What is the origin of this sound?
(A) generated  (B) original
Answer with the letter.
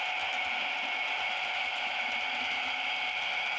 B